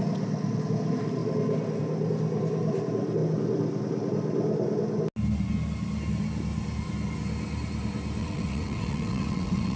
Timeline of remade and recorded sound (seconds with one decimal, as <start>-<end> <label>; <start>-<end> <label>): 0.0-8.2 recorded; 8.2-9.8 remade